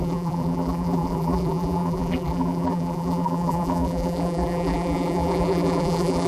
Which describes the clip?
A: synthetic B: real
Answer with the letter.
A